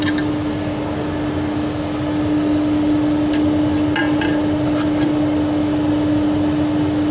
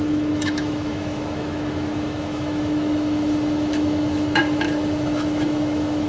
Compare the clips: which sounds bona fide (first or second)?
first